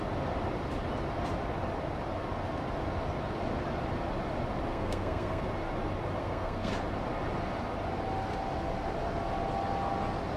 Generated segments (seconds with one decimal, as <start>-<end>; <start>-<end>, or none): 4.7-5.4; 6.2-6.7